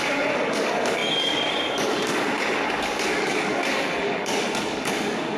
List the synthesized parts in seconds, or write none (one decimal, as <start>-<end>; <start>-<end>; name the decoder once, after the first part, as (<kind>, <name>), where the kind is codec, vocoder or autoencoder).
0.0-5.4 (codec, DAC)